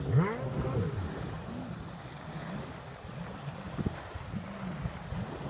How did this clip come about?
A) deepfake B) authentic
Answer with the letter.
B